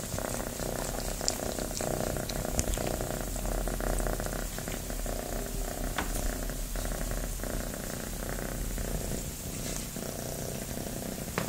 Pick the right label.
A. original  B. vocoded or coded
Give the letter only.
A